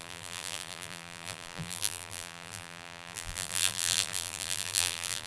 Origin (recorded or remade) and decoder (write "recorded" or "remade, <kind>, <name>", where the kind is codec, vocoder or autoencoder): remade, vocoder, BigVGAN v2